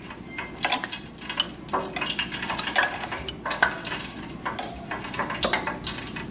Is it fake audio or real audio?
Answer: real